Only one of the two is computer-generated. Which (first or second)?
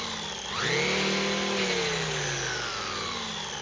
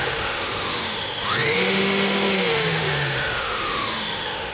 second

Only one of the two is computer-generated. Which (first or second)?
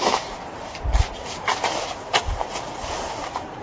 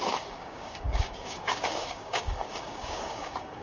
second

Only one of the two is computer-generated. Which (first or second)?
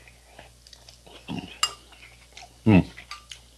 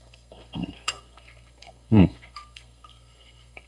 second